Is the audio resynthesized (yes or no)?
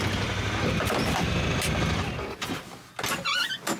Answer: no